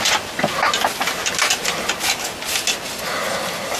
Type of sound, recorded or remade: recorded